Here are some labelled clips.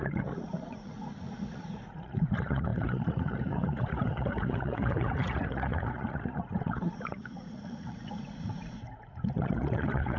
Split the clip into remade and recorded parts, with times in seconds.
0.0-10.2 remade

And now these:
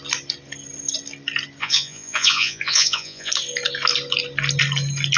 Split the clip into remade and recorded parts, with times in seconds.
0.0-1.6 recorded; 1.6-3.3 remade; 3.3-5.2 recorded

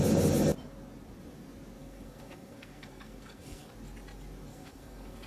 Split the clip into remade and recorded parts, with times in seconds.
0.0-1.8 recorded; 1.8-3.7 remade; 3.7-4.5 recorded; 4.5-5.3 remade

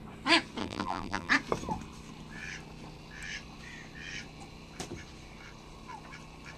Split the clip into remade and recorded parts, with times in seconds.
0.0-0.6 recorded; 0.6-1.3 remade; 1.3-6.6 recorded

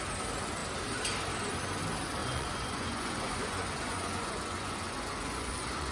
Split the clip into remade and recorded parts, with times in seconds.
0.0-2.2 recorded; 2.2-5.9 remade

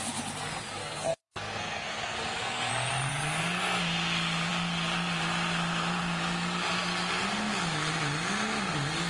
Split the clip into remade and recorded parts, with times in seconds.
0.0-0.8 recorded; 0.8-2.7 remade; 2.7-3.1 recorded; 3.1-3.8 remade; 3.8-9.1 recorded